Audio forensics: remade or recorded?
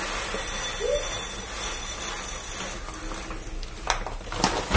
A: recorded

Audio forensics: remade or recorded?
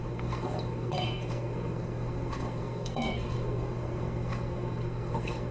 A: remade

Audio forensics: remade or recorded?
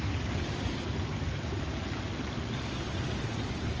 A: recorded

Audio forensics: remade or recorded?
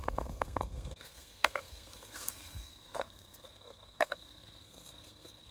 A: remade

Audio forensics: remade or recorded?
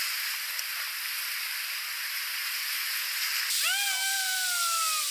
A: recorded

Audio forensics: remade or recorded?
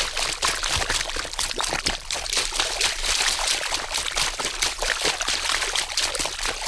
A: recorded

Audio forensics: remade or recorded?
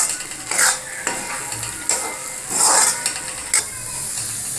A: recorded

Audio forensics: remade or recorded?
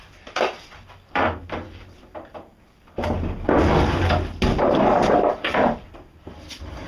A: recorded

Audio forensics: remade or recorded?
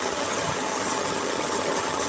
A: remade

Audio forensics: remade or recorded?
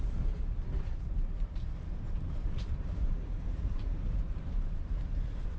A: remade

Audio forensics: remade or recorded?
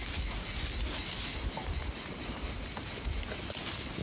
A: recorded